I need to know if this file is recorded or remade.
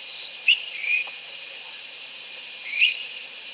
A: remade